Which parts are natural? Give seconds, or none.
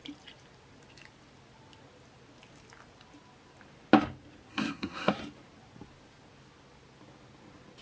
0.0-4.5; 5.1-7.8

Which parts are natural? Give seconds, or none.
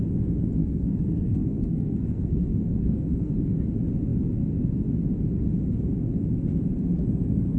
0.0-0.6; 3.3-7.6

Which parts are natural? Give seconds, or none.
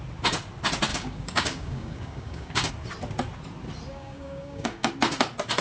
0.0-0.9; 2.7-3.9; 4.9-5.6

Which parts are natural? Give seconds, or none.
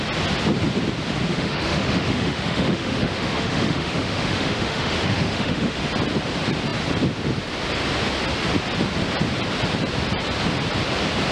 0.0-1.3; 5.8-11.3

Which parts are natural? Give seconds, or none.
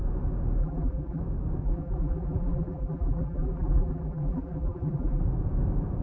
0.0-0.6; 1.2-1.6; 5.2-6.0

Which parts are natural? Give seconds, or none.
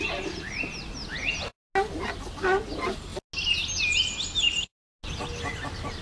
0.0-6.0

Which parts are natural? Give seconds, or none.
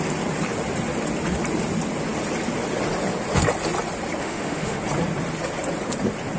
0.0-4.2; 4.8-6.4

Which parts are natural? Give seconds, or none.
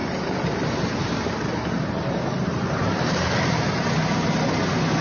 0.8-1.5; 4.5-5.0